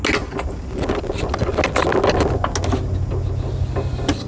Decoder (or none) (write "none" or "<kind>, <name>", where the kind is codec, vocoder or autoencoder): none